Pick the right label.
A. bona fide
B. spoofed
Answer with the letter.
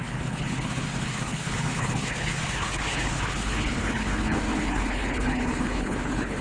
B